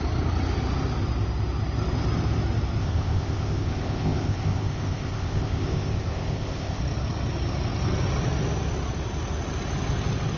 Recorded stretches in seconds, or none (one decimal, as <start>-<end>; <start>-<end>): 0.0-2.8; 6.8-10.4